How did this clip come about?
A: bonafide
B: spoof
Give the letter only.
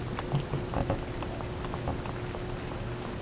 A